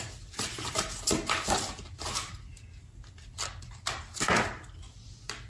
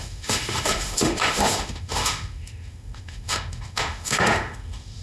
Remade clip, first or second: second